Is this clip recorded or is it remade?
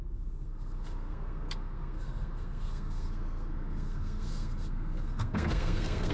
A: remade